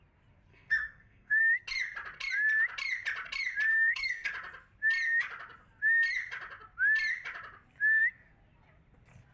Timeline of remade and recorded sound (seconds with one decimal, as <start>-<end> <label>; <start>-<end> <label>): 0.0-0.5 recorded; 0.5-1.4 remade; 1.4-3.7 recorded; 3.7-4.3 remade; 4.3-9.3 recorded